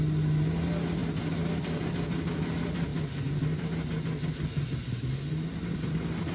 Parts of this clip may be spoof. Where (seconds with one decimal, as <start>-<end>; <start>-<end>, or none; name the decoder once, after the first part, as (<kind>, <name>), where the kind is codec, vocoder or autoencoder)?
none